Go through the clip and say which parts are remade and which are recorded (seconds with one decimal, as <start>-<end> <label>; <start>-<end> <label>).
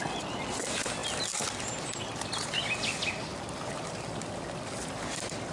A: 0.0-5.5 recorded